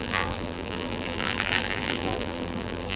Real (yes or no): no